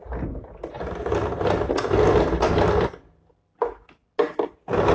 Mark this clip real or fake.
real